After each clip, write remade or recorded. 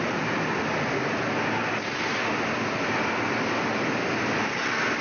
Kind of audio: recorded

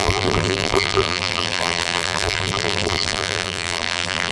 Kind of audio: remade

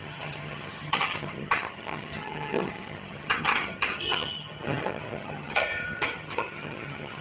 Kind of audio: remade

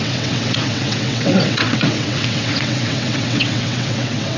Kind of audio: remade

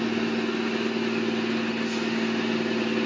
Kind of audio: recorded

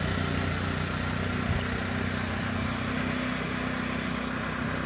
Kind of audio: recorded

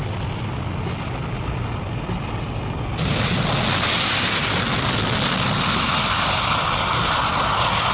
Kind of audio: recorded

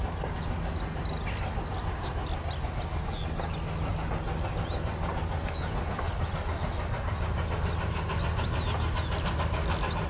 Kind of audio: recorded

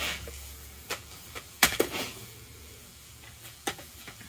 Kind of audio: remade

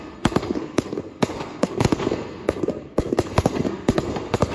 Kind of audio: remade